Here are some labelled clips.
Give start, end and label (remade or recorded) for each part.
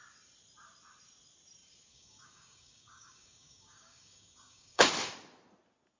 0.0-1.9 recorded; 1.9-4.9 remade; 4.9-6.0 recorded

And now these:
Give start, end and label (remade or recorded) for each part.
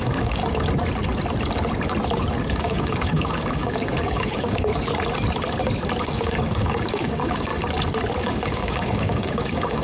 0.0-0.4 remade; 0.4-2.4 recorded; 2.4-4.7 remade; 4.7-6.0 recorded; 6.0-7.5 remade; 7.5-8.2 recorded; 8.2-9.8 remade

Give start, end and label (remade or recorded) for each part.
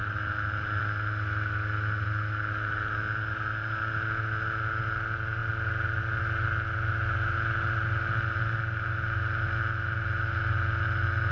0.0-11.3 recorded